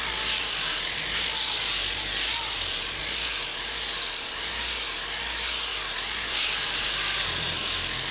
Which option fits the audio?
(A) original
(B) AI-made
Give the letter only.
A